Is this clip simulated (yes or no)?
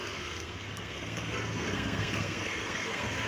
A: yes